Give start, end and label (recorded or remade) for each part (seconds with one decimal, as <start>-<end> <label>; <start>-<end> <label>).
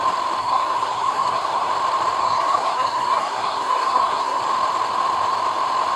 0.0-0.4 recorded; 0.4-1.7 remade; 1.7-2.2 recorded; 2.2-4.4 remade; 4.4-6.0 recorded